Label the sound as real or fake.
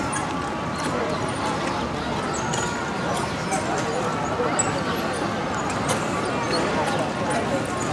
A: real